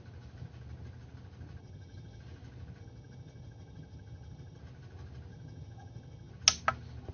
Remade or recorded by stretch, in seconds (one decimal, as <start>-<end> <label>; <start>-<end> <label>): 0.0-1.6 recorded; 1.6-2.2 remade; 2.2-2.8 recorded; 2.8-4.6 remade; 4.6-5.3 recorded; 5.3-6.3 remade; 6.3-7.1 recorded

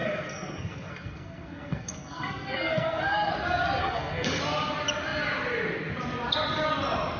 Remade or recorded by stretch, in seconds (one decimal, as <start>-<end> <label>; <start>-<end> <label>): 0.0-3.3 remade; 3.3-3.8 recorded; 3.8-4.4 remade; 4.4-7.2 recorded

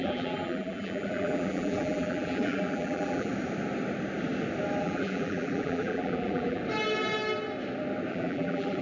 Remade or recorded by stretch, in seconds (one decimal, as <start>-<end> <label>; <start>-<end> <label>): 0.0-3.3 remade; 3.3-4.8 recorded; 4.8-6.6 remade; 6.6-8.1 recorded; 8.1-8.8 remade

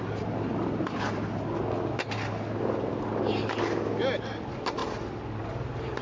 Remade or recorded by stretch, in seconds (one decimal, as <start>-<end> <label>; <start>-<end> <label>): 0.0-6.0 recorded

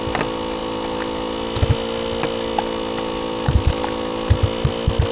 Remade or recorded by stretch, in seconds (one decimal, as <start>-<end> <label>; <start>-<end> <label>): 0.0-5.1 recorded

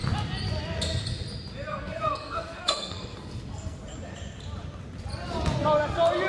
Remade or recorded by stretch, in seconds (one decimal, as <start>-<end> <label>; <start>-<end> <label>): 0.0-1.7 recorded; 1.7-3.8 remade; 3.8-6.3 recorded

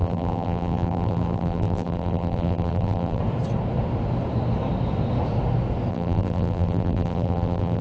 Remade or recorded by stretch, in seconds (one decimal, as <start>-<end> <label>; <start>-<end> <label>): 0.0-3.2 remade; 3.2-5.9 recorded; 5.9-7.8 remade